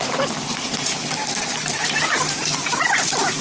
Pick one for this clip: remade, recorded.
recorded